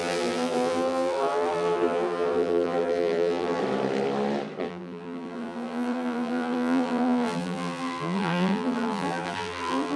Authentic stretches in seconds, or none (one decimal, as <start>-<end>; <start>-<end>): 3.6-4.6